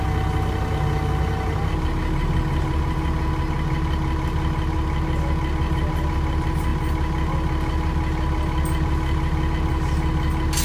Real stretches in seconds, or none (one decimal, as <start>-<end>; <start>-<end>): 0.0-10.6